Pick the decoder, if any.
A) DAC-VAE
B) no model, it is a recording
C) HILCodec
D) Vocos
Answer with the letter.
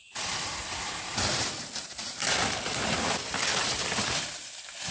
B